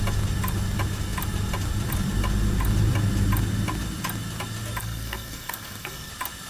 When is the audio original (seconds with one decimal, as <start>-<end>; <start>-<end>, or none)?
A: 0.0-4.8; 6.1-6.5